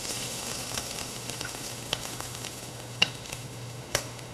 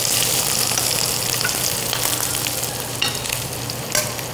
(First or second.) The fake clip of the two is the first